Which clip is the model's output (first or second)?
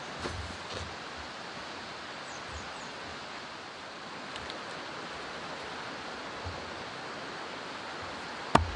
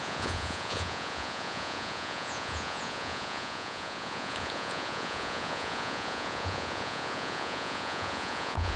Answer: second